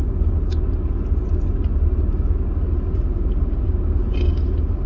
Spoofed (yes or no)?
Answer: no